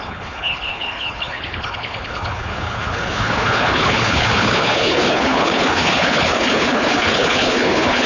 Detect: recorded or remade remade